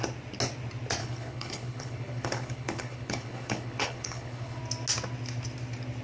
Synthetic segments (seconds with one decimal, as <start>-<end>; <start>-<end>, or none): 1.0-4.6